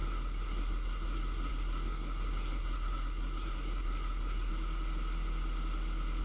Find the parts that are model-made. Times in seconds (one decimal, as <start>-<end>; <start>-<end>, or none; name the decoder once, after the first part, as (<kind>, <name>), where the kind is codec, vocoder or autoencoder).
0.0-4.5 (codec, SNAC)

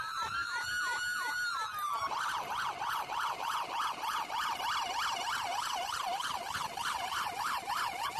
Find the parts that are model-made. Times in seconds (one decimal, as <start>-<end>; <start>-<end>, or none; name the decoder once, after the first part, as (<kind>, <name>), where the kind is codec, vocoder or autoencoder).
none

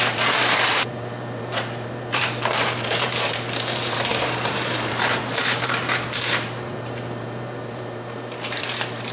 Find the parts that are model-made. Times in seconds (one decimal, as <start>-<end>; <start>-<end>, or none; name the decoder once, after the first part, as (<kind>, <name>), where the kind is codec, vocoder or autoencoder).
0.0-2.2 (vocoder, BigVGAN v2); 2.8-9.1

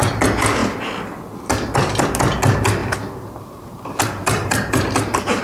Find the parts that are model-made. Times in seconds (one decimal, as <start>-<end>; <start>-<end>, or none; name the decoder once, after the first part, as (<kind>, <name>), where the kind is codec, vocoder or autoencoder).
2.8-5.4 (vocoder, BigVGAN v2)